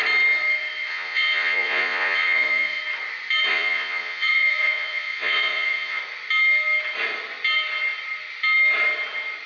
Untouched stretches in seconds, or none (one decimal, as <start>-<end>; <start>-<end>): 0.0-0.9; 2.8-3.5; 6.0-9.5